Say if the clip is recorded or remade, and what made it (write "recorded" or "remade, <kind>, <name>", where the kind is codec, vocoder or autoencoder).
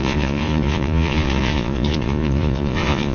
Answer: remade, vocoder, Vocos